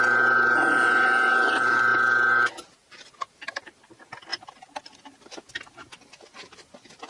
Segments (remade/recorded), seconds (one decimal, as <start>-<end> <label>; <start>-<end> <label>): 0.0-7.1 recorded

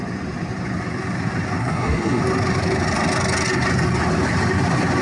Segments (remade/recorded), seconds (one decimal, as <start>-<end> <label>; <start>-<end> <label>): 0.0-1.6 recorded; 1.6-2.2 remade; 2.2-5.0 recorded

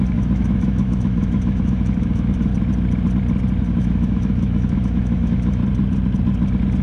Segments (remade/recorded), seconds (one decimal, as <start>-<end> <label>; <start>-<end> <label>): 0.0-2.5 remade; 2.5-3.6 recorded; 3.6-5.6 remade; 5.6-6.8 recorded

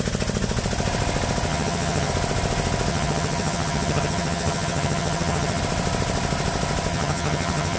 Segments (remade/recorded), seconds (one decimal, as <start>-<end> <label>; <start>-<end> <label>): 0.0-1.5 recorded; 1.5-2.1 remade; 2.1-2.9 recorded; 2.9-5.6 remade; 5.6-6.9 recorded; 6.9-7.8 remade

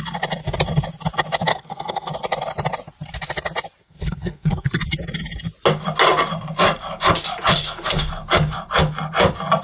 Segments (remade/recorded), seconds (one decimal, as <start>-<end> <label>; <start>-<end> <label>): 0.0-1.5 recorded; 1.5-2.1 remade; 2.1-3.8 recorded; 3.8-4.8 remade; 4.8-7.5 recorded; 7.5-8.1 remade; 8.1-9.6 recorded

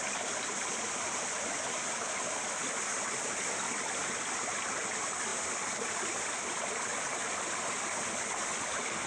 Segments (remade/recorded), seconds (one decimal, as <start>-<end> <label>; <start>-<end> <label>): 0.0-9.1 recorded